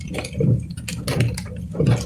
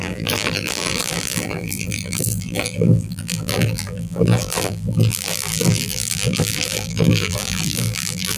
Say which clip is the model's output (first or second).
second